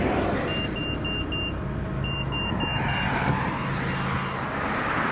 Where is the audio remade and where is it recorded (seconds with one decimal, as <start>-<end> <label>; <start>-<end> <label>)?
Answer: 0.0-5.1 recorded